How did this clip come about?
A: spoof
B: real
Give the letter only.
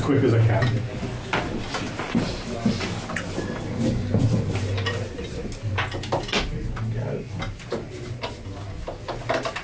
B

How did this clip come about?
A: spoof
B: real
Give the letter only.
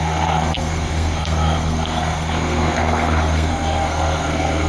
A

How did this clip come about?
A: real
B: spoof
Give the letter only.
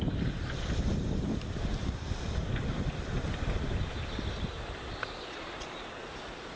B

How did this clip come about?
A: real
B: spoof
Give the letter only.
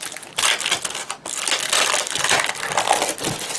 A